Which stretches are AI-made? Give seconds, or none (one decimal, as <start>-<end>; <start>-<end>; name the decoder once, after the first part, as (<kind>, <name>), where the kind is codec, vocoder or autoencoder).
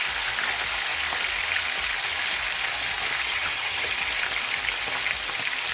3.3-3.9 (vocoder, HiFi-GAN)